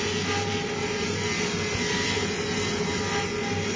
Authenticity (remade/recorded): recorded